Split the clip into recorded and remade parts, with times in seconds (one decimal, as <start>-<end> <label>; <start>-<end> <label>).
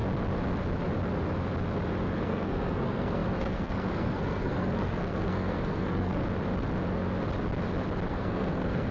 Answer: 0.0-2.2 recorded; 2.2-6.2 remade; 6.2-8.1 recorded; 8.1-8.9 remade